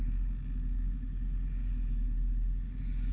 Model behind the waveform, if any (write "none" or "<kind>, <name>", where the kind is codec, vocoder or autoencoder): none